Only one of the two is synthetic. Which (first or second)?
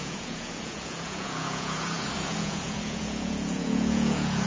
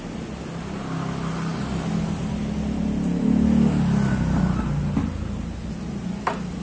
first